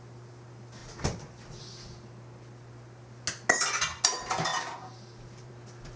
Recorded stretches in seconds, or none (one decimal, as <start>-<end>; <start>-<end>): 0.0-4.5; 5.5-6.0